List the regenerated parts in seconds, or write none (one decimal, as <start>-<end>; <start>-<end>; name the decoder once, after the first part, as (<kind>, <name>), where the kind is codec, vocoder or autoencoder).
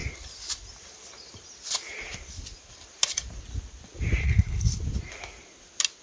4.2-4.8 (codec, HILCodec)